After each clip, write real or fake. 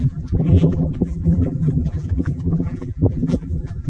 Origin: fake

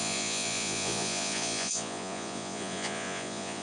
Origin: fake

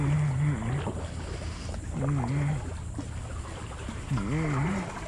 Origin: real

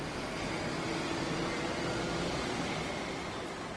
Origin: fake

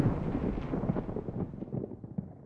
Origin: real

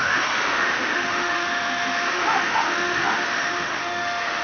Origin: fake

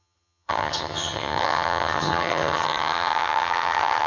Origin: fake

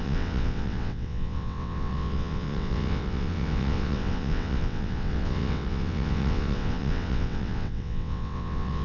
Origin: fake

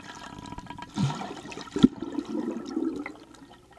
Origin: real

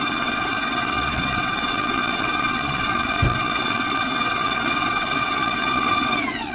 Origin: fake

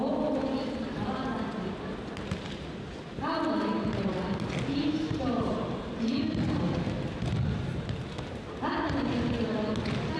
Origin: real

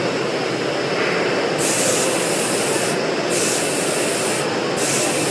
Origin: real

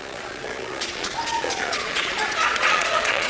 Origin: fake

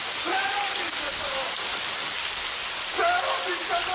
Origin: real